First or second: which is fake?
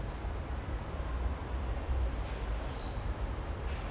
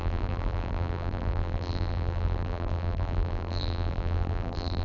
second